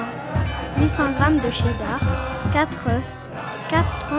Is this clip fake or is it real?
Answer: real